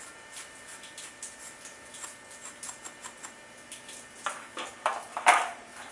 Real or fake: real